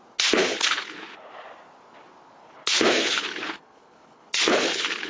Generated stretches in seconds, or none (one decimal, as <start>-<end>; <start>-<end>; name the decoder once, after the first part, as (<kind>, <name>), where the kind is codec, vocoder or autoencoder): 0.4-1.3 (codec, HILCodec); 2.4-5.1